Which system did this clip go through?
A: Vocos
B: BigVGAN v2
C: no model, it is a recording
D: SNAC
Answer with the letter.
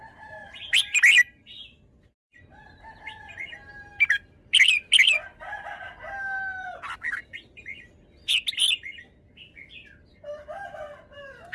C